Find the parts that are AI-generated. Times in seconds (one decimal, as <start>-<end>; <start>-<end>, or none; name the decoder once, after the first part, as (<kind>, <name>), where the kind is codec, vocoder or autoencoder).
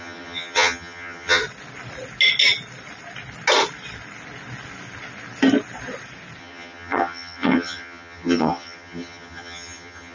0.0-1.4 (vocoder, HiFi-GAN); 6.4-10.1